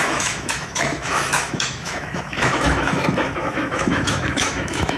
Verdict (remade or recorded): remade